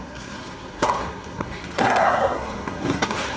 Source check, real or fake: fake